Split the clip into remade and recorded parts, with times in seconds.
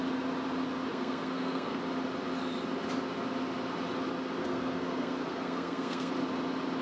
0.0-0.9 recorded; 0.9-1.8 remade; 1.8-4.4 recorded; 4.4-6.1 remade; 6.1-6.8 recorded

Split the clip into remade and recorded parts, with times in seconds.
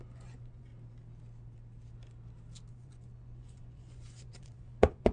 0.0-0.7 remade; 0.7-2.7 recorded; 2.7-5.1 remade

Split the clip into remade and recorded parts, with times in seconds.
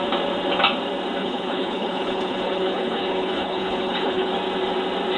0.0-1.2 recorded; 1.2-4.3 remade; 4.3-5.2 recorded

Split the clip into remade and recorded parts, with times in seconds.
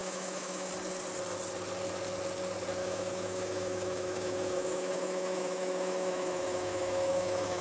0.0-0.7 remade; 0.7-2.8 recorded; 2.8-7.6 remade